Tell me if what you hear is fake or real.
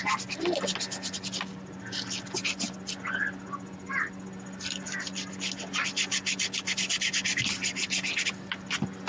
real